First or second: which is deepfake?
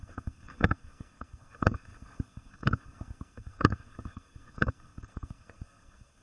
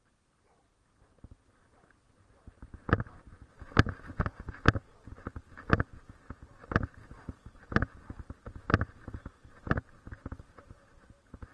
first